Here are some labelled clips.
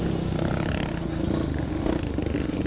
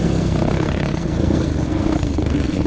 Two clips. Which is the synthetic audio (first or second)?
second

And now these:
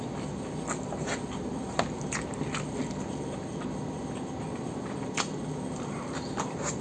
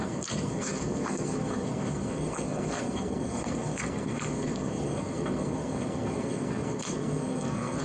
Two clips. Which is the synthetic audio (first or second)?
second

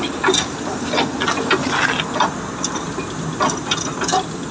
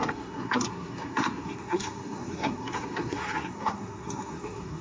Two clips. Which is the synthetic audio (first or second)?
second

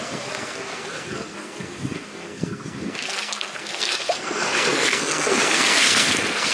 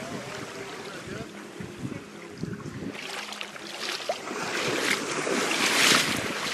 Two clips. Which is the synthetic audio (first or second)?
first